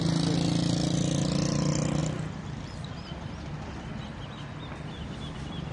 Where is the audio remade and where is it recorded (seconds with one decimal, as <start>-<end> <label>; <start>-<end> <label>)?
0.0-5.7 recorded